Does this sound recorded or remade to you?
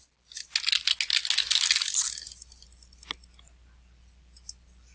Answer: recorded